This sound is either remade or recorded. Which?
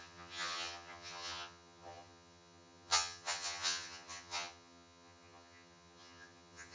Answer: remade